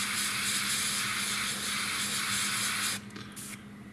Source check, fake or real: real